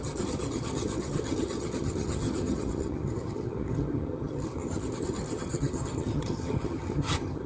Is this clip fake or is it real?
fake